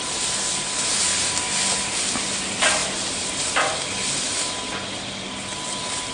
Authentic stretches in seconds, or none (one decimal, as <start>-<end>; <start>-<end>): 0.0-6.1